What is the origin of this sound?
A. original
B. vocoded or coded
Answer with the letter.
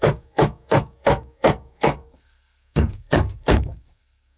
B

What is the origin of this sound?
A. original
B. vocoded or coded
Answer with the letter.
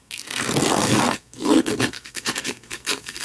B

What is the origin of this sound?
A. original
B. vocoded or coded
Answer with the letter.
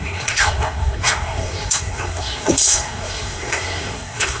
B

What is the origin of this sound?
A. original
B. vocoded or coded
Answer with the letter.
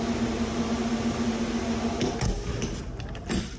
A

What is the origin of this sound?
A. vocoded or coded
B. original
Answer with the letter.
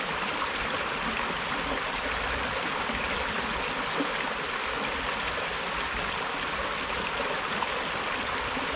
B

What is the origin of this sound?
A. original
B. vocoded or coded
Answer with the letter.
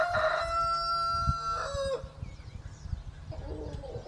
A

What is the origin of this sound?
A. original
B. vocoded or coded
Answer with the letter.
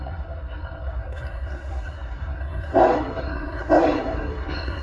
B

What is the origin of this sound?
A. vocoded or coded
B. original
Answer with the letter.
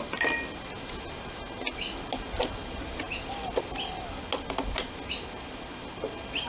B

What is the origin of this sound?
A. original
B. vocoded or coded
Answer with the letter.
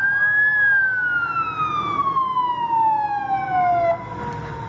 A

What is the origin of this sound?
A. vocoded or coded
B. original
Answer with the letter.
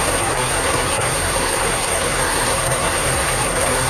A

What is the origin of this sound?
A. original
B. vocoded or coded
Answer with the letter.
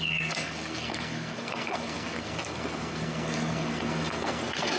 B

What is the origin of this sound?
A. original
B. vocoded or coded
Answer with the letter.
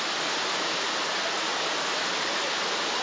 A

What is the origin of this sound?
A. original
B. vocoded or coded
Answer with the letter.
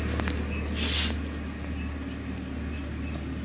A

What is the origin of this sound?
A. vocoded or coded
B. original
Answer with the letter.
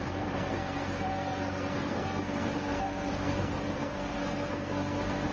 A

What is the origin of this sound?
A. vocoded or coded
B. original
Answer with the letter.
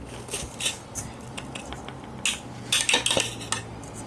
B